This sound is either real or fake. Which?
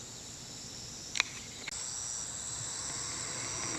real